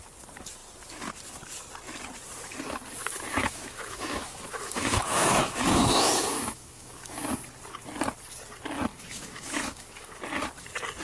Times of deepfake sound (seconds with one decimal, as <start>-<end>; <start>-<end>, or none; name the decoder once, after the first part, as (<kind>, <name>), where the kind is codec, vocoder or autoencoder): 3.4-7.2 (autoencoder, DAC-VAE); 8.9-10.2